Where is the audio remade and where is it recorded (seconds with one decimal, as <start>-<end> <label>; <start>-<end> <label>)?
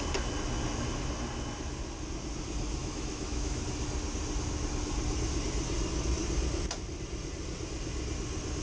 0.0-2.8 recorded; 2.8-3.6 remade; 3.6-8.6 recorded